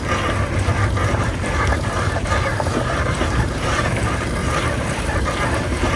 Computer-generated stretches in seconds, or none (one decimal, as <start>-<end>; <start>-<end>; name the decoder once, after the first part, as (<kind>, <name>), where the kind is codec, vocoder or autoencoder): 1.0-2.1 (vocoder, BigVGAN v2); 2.5-3.8; 4.4-6.0